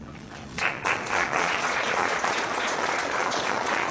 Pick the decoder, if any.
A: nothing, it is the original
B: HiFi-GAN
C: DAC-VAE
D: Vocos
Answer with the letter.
D